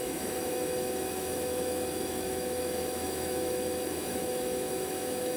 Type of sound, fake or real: fake